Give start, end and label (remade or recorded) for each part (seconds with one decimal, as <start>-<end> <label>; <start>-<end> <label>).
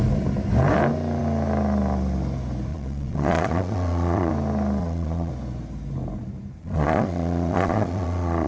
0.0-2.7 recorded; 2.7-4.3 remade; 4.3-4.8 recorded; 4.8-5.3 remade; 5.3-6.6 recorded; 6.6-8.5 remade